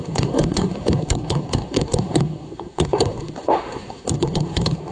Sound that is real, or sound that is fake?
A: fake